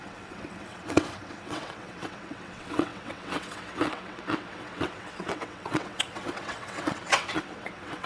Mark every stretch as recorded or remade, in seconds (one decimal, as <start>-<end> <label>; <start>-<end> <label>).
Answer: 0.0-8.1 remade